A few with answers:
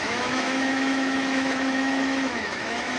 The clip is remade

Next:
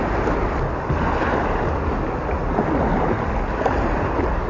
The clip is recorded